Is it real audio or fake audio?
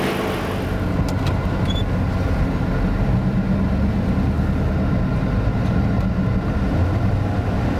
real